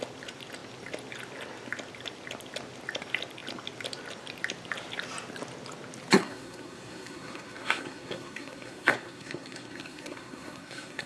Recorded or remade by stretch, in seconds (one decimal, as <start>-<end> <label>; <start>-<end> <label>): 0.0-6.2 recorded; 6.2-11.1 remade